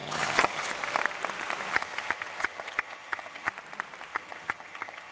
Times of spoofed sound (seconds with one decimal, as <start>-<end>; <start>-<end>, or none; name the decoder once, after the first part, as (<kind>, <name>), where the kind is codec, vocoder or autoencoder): 0.0-0.7 (vocoder, HiFi-GAN); 1.7-3.5; 4.1-5.1